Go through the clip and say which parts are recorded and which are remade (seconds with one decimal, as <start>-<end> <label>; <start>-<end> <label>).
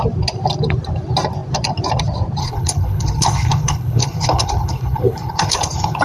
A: 0.0-2.4 recorded; 2.4-6.0 remade